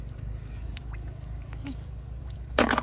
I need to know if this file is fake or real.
fake